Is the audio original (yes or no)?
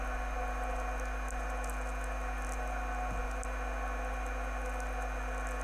yes